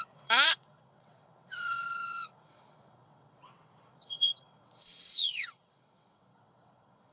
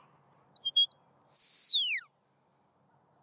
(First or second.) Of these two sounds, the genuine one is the second